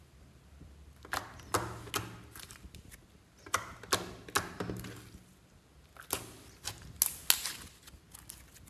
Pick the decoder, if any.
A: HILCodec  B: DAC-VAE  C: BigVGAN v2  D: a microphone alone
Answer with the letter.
D